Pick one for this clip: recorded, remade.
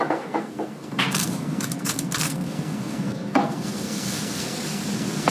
remade